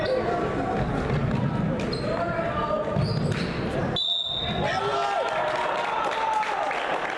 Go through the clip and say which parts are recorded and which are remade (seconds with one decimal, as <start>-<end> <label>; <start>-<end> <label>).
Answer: 0.0-1.2 recorded; 1.2-3.2 remade; 3.2-4.9 recorded; 4.9-7.2 remade